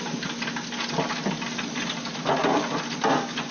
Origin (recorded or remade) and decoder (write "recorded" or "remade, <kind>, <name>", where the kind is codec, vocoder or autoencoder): recorded